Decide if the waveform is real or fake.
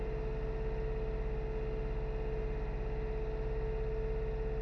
real